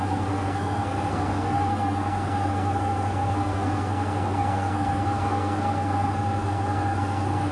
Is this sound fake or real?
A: fake